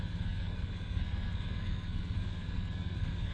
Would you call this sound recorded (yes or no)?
no